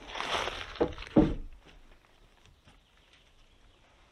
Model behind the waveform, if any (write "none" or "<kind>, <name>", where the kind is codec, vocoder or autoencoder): vocoder, BigVGAN v2